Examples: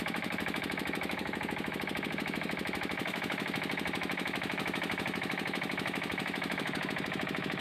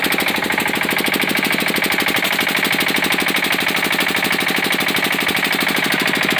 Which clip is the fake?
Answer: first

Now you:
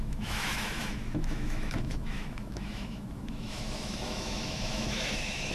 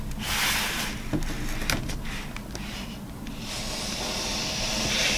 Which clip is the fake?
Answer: first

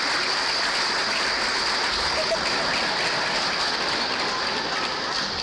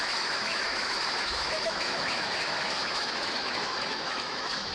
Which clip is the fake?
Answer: second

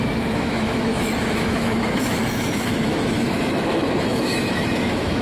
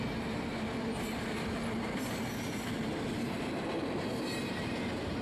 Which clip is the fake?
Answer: first